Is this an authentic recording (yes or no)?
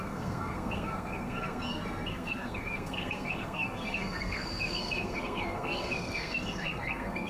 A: no